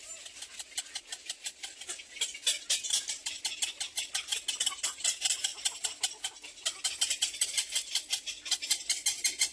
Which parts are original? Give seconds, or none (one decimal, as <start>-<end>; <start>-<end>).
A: 0.0-9.5